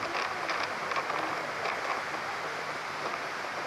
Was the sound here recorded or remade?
recorded